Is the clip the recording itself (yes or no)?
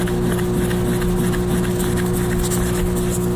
yes